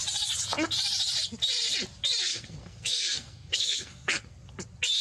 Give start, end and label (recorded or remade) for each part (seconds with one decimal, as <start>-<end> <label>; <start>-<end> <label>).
0.0-2.3 recorded; 2.3-4.5 remade; 4.5-5.0 recorded